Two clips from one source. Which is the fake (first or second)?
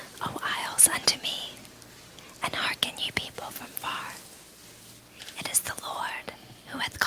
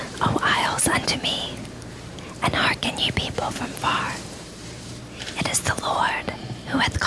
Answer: second